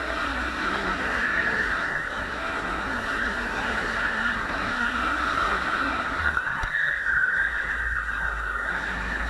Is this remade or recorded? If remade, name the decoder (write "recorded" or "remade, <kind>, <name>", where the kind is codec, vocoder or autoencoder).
remade, codec, SNAC